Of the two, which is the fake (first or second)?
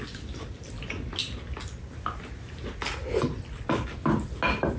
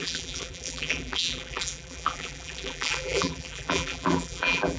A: second